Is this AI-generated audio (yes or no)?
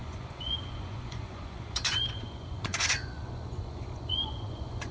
yes